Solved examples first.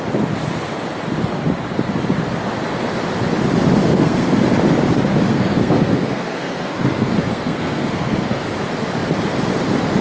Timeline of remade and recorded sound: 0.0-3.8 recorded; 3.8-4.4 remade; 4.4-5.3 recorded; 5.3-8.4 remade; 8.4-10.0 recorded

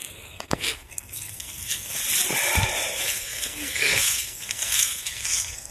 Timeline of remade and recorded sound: 0.0-2.0 remade; 2.0-3.0 recorded; 3.0-5.7 remade

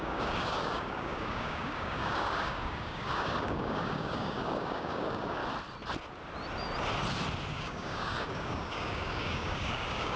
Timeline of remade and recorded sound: 0.0-5.4 remade; 5.4-7.5 recorded; 7.5-10.2 remade

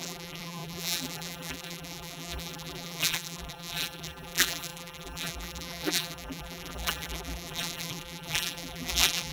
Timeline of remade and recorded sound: 0.0-9.3 remade